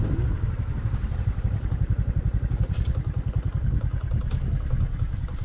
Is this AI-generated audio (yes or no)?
no